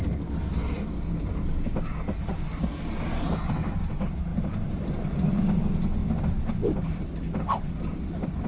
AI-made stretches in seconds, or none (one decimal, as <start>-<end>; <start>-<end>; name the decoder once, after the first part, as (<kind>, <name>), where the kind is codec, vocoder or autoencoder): 4.3-5.4 (vocoder, BigVGAN v2)